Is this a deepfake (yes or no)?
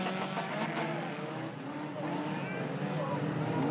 no